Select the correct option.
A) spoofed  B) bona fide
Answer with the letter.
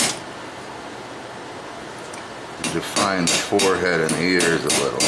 B